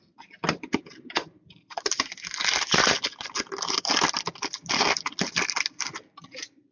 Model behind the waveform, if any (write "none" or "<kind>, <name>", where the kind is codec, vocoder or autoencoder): none